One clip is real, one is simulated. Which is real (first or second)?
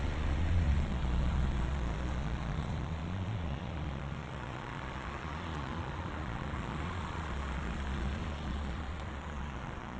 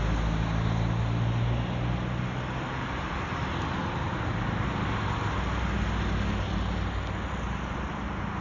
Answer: second